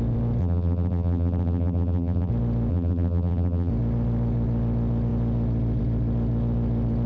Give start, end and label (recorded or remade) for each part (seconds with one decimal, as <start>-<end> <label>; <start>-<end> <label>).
0.0-0.4 recorded; 0.4-2.3 remade; 2.3-2.7 recorded; 2.7-3.7 remade; 3.7-7.1 recorded